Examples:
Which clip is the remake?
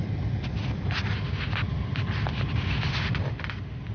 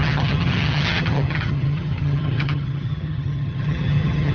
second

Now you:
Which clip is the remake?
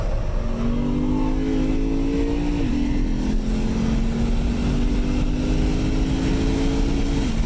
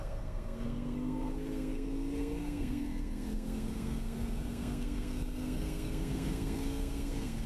second